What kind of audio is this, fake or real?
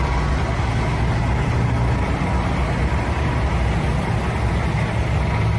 real